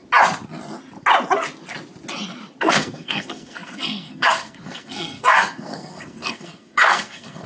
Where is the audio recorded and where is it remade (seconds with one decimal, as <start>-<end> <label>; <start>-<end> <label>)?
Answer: 0.0-2.6 recorded; 2.6-7.5 remade

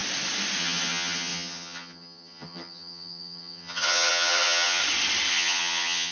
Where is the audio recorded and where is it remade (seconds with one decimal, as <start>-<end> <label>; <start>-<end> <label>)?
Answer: 0.0-0.6 recorded; 0.6-4.8 remade; 4.8-5.3 recorded; 5.3-6.1 remade

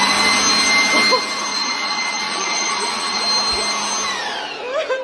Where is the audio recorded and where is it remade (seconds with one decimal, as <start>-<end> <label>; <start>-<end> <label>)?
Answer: 0.0-1.5 recorded; 1.5-3.2 remade; 3.2-5.0 recorded

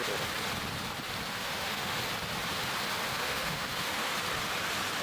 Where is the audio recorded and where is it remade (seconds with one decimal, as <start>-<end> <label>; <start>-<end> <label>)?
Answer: 0.0-1.3 recorded; 1.3-2.0 remade; 2.0-3.1 recorded; 3.1-4.1 remade; 4.1-5.0 recorded

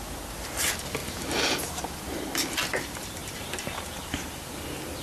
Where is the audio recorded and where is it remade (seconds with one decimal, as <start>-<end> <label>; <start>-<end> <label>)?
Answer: 0.0-1.0 recorded; 1.0-1.8 remade; 1.8-3.2 recorded; 3.2-4.4 remade; 4.4-5.0 recorded

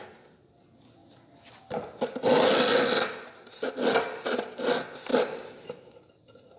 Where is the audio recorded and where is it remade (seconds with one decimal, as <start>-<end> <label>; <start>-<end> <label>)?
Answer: 0.0-6.6 recorded